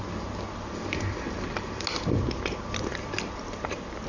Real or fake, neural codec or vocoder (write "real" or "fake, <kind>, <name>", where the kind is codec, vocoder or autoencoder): real